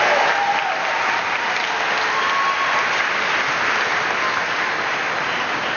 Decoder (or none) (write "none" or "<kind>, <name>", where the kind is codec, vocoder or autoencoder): none